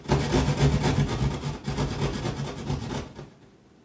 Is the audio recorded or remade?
recorded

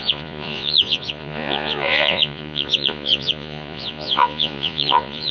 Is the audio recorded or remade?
remade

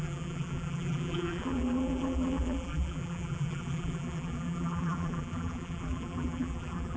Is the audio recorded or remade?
remade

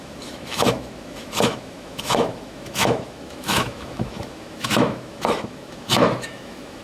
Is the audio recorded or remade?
remade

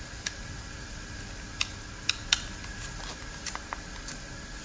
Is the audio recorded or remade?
recorded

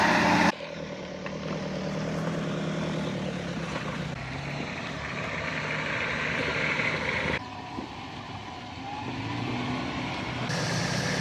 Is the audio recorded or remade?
remade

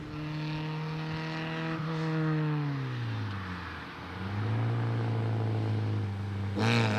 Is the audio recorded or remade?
recorded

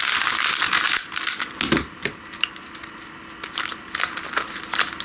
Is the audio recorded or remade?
recorded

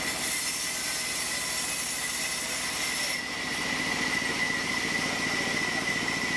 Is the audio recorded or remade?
recorded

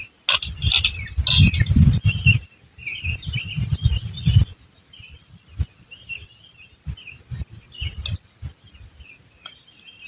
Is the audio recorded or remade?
recorded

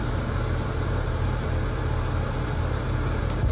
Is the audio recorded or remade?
remade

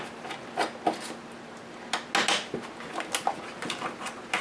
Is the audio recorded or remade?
recorded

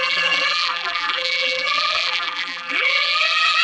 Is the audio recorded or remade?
remade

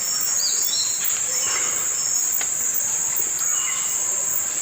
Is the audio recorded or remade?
recorded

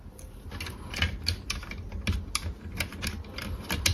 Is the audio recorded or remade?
recorded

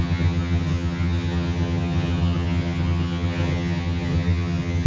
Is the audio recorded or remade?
remade